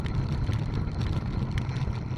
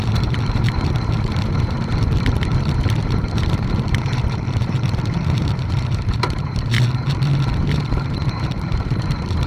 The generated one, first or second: second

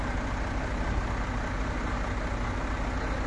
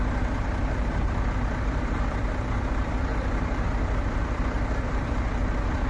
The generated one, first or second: second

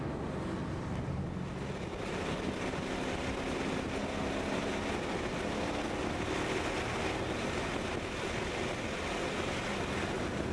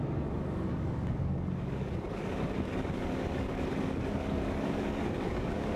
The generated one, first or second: second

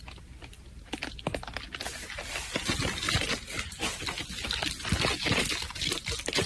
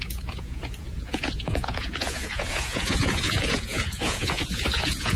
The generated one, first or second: second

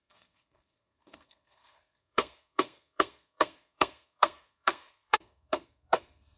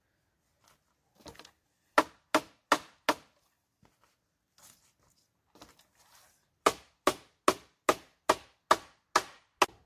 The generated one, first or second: first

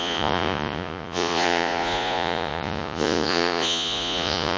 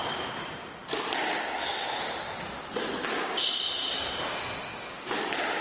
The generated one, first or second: first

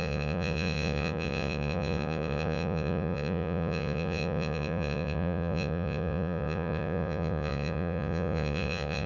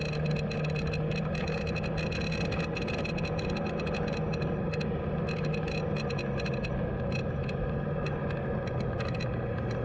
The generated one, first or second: first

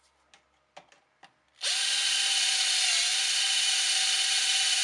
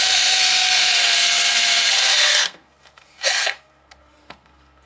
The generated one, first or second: second